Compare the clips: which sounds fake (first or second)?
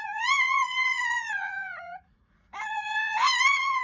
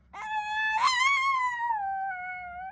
first